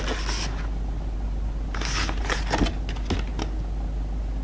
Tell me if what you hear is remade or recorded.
recorded